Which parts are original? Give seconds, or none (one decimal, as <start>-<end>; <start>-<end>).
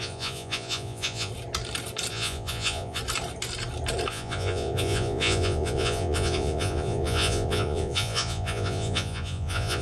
1.3-2.1; 3.0-4.1